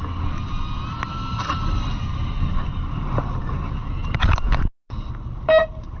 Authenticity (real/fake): real